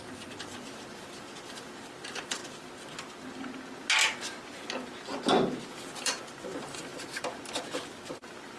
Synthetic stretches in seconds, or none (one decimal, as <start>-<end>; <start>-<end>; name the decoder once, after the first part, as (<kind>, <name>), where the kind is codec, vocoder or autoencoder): 0.0-2.4 (vocoder, BigVGAN v2); 5.6-8.6